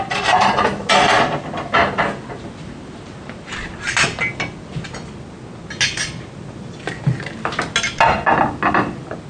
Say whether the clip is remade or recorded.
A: recorded